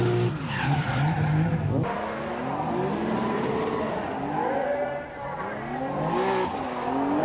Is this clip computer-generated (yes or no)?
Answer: no